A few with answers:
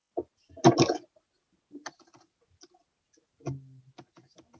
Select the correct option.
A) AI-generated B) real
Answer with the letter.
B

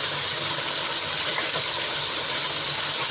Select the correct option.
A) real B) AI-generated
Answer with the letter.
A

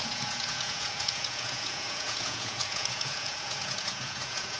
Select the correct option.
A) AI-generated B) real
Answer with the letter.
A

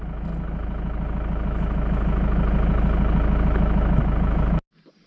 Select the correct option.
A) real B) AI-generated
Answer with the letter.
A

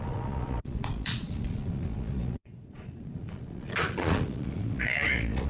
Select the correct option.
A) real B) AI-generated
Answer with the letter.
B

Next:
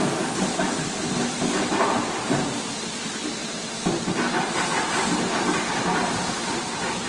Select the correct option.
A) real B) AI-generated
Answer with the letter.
A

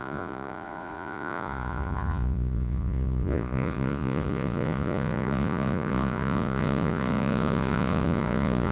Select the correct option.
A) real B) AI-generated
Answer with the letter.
B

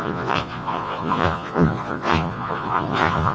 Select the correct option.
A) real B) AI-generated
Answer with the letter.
B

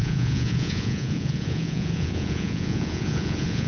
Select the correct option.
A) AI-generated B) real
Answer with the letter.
A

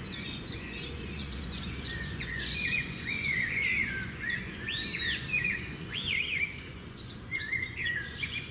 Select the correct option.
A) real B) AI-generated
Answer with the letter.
B